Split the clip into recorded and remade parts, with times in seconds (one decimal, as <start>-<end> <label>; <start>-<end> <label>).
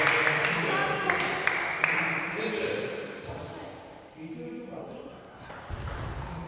0.0-4.8 recorded; 4.8-5.5 remade; 5.5-6.5 recorded